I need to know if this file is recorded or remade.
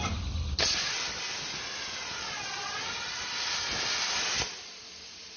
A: recorded